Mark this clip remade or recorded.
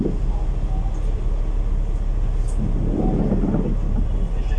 recorded